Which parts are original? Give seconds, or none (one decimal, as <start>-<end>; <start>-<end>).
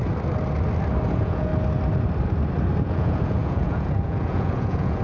0.0-1.1; 1.5-2.8